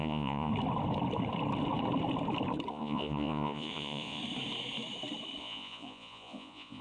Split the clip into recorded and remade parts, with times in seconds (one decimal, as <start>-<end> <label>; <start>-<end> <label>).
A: 0.0-0.5 remade; 0.5-2.7 recorded; 2.7-4.2 remade; 4.2-5.4 recorded; 5.4-6.8 remade